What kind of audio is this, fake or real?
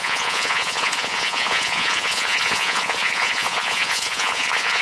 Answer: fake